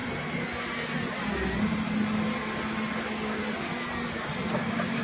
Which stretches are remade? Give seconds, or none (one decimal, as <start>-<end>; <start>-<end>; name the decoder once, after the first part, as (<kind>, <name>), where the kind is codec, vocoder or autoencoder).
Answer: 3.0-3.4 (codec, DAC); 4.5-5.0